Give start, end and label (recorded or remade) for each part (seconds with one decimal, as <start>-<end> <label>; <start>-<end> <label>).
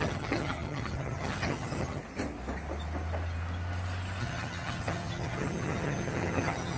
0.0-2.0 remade; 2.0-4.2 recorded; 4.2-6.8 remade